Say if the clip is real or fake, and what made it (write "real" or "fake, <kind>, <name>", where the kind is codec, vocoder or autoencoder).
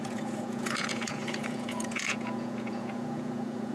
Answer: fake, vocoder, Vocos